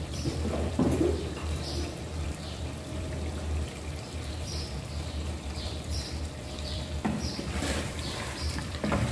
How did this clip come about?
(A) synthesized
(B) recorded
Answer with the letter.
A